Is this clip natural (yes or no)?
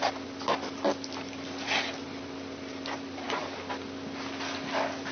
yes